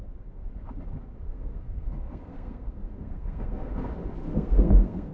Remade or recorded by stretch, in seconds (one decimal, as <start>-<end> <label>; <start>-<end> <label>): 0.0-1.3 recorded; 1.3-3.7 remade; 3.7-4.3 recorded; 4.3-5.1 remade